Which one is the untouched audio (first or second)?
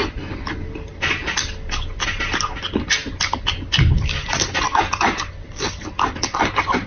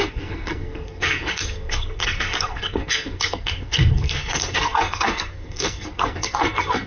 first